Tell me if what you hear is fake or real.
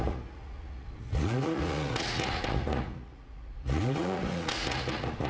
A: fake